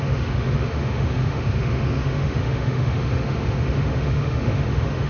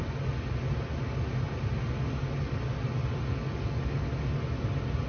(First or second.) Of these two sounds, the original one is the second